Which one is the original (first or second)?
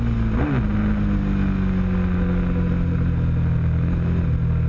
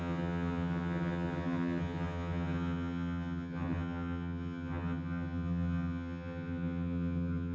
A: first